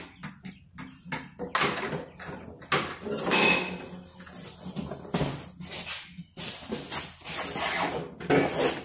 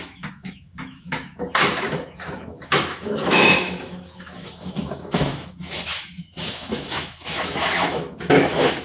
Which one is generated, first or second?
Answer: second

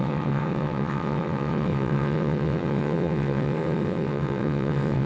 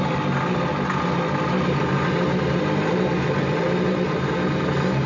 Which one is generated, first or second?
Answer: first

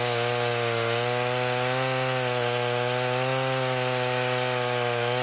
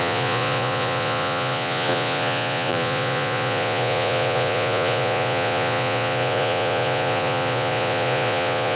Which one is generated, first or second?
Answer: second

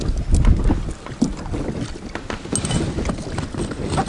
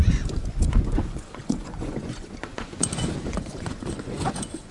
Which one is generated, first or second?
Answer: second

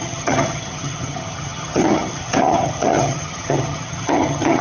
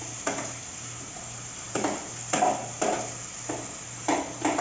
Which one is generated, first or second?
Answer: first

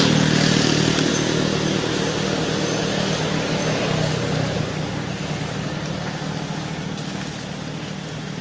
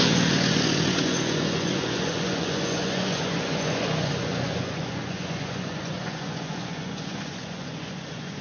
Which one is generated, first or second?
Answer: second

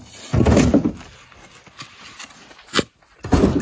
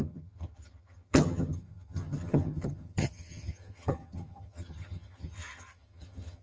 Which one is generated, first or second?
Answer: second